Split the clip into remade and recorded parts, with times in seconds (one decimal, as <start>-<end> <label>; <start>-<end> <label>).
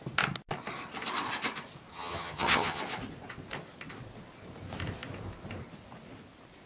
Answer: 0.0-1.9 recorded; 1.9-2.8 remade; 2.8-6.7 recorded